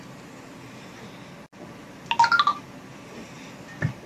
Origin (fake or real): real